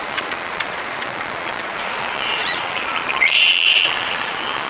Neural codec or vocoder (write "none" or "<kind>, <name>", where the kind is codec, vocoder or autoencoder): vocoder, Vocos